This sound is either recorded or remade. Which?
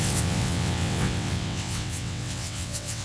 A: remade